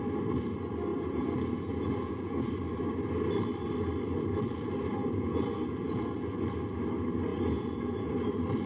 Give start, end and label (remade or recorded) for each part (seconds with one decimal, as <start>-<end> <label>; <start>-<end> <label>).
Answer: 0.0-0.9 recorded; 0.9-2.5 remade; 2.5-5.0 recorded; 5.0-6.4 remade; 6.4-7.3 recorded; 7.3-8.1 remade; 8.1-8.7 recorded